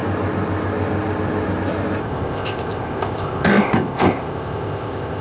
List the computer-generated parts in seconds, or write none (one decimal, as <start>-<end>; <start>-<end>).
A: 2.0-5.2